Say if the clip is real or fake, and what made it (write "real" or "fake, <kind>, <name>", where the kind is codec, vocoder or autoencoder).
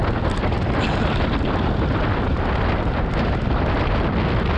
real